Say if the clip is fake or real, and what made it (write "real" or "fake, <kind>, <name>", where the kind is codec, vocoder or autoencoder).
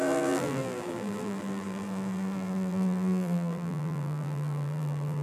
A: fake, vocoder, BigVGAN v2